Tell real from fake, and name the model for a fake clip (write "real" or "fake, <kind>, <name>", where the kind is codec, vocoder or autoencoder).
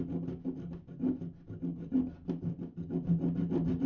real